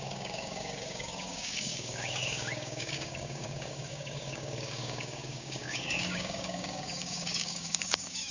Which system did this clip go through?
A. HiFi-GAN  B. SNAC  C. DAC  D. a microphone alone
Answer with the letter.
C